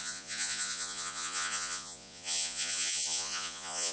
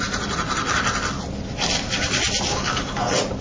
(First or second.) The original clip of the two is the second